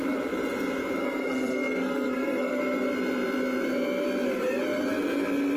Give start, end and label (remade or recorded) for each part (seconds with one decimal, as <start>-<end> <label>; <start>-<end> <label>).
0.0-1.0 recorded; 1.0-2.6 remade; 2.6-5.6 recorded